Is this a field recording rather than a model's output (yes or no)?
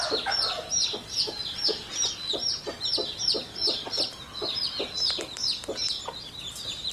yes